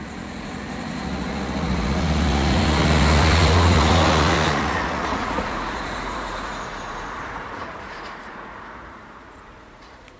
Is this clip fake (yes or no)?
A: yes